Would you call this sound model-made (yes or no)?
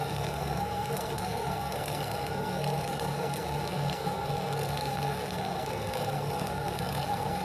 yes